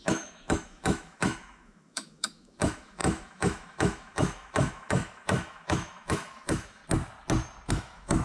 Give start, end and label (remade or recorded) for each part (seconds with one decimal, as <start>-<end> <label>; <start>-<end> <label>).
0.0-6.8 remade; 6.8-7.7 recorded; 7.7-8.2 remade